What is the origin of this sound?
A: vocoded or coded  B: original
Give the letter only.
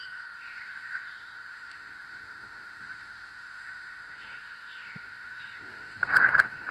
A